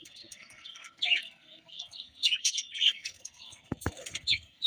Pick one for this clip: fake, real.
fake